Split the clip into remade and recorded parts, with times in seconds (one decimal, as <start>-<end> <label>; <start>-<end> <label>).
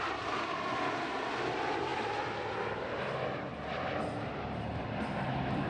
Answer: 0.0-5.7 recorded